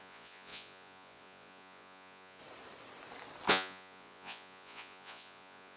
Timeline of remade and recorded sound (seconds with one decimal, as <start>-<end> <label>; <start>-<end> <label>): 0.0-2.4 remade; 2.4-3.5 recorded; 3.5-5.8 remade